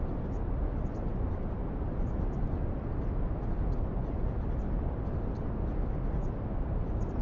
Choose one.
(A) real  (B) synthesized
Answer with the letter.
A